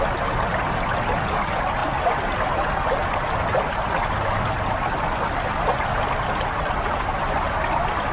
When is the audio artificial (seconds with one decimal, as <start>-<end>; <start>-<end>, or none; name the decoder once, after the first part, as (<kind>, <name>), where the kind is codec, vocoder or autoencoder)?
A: none